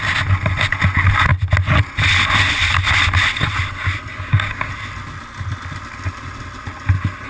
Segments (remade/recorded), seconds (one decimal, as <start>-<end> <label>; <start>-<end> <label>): 0.0-4.1 recorded; 4.1-4.7 remade; 4.7-7.3 recorded